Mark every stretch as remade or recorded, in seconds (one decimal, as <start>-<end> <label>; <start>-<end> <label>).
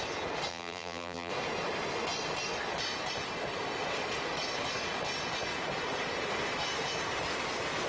0.0-0.5 recorded; 0.5-1.3 remade; 1.3-7.9 recorded